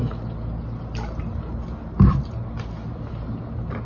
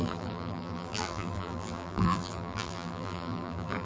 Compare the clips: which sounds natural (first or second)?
first